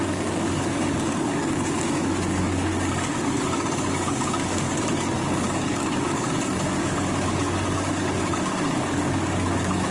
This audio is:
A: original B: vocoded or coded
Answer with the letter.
B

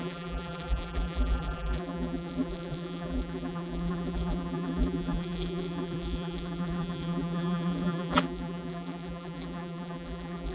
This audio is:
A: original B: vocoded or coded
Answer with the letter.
B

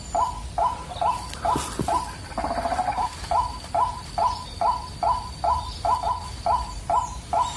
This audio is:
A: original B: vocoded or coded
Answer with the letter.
A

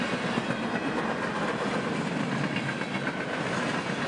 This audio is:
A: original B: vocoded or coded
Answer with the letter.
B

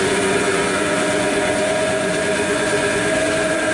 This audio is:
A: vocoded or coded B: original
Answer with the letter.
A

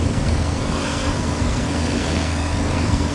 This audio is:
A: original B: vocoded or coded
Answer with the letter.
B